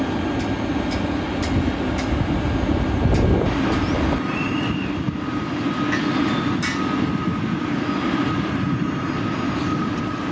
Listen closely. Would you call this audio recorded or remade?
recorded